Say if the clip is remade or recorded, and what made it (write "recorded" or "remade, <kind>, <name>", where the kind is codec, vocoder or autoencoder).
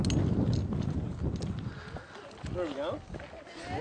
recorded